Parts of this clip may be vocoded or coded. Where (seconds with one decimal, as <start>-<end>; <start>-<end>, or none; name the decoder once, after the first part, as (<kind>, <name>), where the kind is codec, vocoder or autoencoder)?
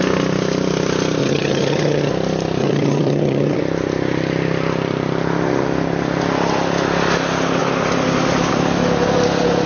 1.2-2.1 (vocoder, HiFi-GAN); 2.6-3.6